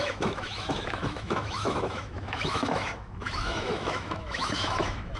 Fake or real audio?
fake